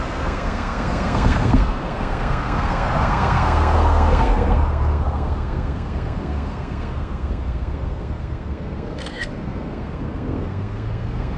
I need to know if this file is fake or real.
fake